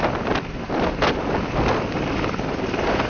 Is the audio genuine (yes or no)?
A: yes